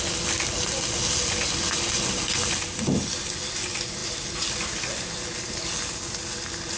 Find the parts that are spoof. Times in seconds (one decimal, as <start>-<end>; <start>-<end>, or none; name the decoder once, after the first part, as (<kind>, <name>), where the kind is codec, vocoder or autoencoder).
none